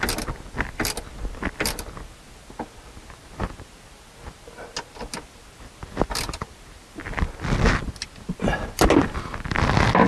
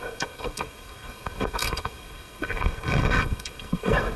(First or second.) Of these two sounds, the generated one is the second